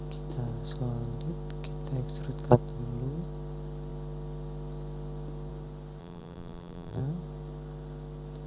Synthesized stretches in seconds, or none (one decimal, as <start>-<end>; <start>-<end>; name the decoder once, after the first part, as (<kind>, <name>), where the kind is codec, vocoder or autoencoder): 6.0-7.0 (vocoder, BigVGAN v2)